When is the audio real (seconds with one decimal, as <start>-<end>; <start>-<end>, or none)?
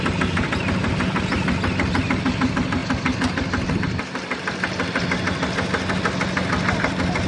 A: 0.0-7.3